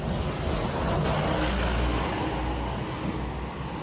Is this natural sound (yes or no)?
yes